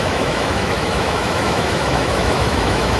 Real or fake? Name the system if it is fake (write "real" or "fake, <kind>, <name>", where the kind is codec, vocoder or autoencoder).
fake, autoencoder, DAC-VAE